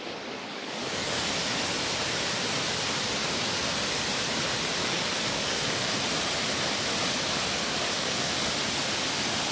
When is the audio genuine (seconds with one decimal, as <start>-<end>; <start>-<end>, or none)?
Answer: 0.0-0.4; 1.3-4.8; 5.9-7.6; 8.5-9.5